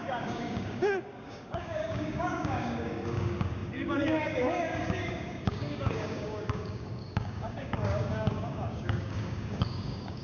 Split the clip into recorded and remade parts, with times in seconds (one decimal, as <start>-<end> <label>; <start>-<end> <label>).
0.0-10.2 remade